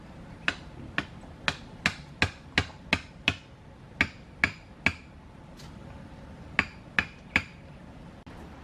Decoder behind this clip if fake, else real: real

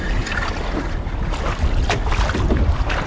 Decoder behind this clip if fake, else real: real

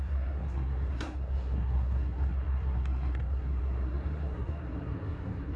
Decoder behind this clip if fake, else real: fake, codec, SNAC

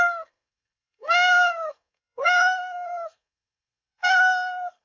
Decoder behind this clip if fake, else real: fake, codec, SNAC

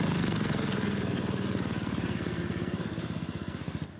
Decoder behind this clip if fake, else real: fake, codec, SNAC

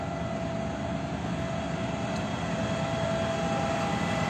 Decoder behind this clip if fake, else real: real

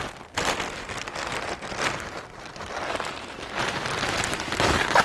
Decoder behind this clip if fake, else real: real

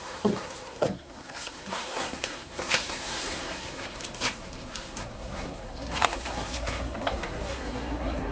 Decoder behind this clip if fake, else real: fake, codec, SNAC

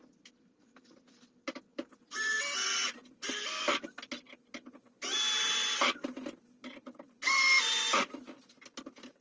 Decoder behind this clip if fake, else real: real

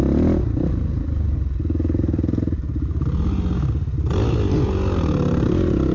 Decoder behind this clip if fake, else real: real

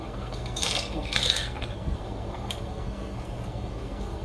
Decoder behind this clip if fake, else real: fake, codec, SNAC